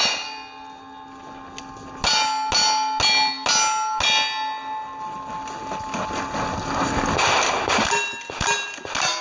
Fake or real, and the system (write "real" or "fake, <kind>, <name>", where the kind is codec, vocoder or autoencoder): real